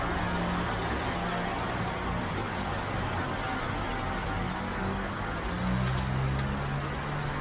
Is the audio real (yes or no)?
yes